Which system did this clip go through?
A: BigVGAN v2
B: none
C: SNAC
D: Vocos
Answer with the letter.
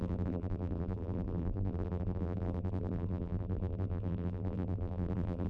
A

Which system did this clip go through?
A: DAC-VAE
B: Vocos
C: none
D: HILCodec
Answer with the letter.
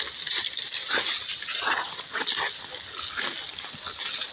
C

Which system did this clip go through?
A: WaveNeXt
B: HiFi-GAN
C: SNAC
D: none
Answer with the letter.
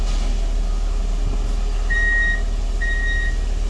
D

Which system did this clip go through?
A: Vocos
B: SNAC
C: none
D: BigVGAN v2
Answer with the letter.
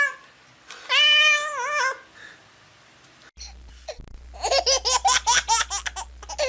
C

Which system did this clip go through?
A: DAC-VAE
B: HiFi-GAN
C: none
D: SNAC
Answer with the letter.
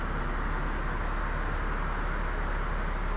C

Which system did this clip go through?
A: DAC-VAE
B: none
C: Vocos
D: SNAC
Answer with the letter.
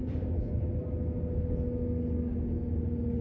B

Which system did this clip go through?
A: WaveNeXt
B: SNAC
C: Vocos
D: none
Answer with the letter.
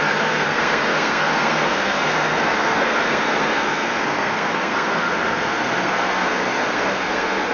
B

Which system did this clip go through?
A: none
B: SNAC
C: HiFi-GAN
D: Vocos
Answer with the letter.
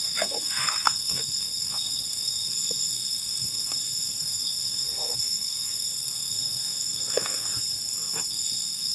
B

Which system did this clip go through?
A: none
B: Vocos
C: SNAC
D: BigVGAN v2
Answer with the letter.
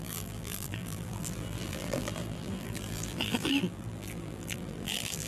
D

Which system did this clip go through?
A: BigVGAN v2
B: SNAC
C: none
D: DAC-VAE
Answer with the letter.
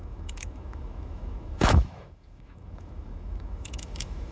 D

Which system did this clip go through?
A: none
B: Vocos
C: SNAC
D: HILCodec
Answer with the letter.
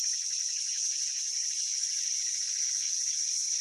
D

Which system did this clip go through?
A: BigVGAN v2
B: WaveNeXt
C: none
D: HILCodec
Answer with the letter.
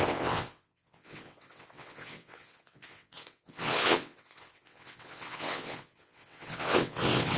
B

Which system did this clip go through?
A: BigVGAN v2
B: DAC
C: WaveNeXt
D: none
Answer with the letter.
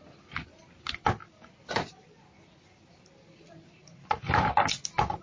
D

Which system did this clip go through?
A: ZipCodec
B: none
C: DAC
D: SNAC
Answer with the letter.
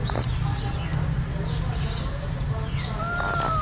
B